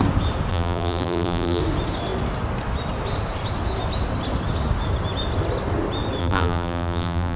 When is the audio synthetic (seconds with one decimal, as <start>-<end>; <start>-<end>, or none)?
0.5-1.6; 6.2-7.4